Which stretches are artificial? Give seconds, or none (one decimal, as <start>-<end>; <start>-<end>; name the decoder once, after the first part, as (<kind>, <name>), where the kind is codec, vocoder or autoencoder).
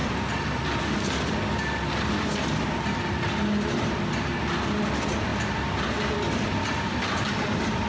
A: none